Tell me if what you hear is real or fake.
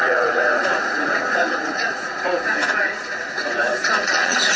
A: fake